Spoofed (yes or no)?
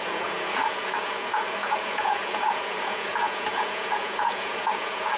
yes